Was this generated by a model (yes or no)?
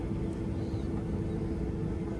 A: no